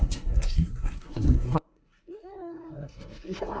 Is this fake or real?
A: fake